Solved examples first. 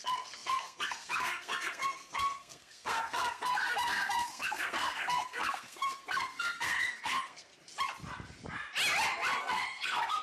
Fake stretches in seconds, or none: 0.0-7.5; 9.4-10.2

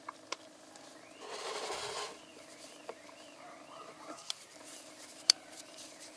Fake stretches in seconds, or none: 2.3-6.2

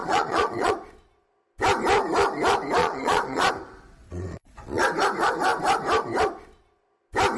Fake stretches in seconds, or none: 0.0-0.7; 2.8-3.5; 4.0-4.8

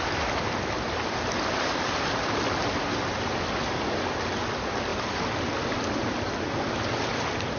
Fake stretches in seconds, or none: none

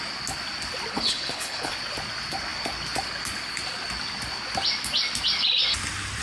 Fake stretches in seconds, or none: 0.9-1.7

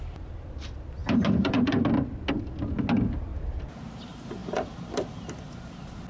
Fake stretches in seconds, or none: 1.0-1.9; 3.3-3.9; 4.4-5.6